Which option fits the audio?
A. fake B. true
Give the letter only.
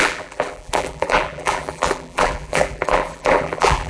A